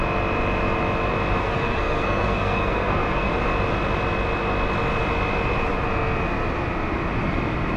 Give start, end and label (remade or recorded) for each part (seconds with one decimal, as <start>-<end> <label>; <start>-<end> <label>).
0.0-1.4 recorded; 1.4-3.3 remade; 3.3-7.8 recorded